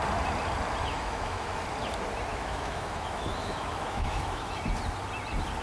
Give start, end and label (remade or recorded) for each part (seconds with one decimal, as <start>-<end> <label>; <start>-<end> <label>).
0.0-0.8 recorded; 0.8-1.6 remade; 1.6-2.3 recorded; 2.3-4.6 remade; 4.6-5.6 recorded